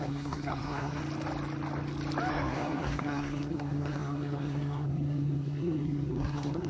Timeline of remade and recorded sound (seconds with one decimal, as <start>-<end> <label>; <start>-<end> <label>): 0.0-1.0 remade; 1.0-2.3 recorded; 2.3-6.7 remade